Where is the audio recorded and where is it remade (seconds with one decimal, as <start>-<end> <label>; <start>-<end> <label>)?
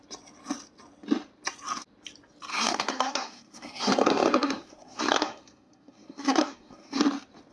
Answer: 0.0-2.5 recorded; 2.5-7.0 remade; 7.0-7.5 recorded